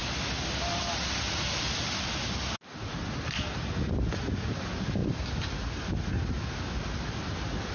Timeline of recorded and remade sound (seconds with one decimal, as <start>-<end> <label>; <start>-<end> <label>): 0.0-7.7 recorded